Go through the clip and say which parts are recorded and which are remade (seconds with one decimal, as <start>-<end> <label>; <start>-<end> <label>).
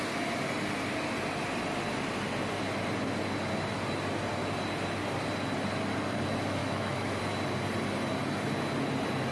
0.0-6.6 recorded; 6.6-7.2 remade; 7.2-9.3 recorded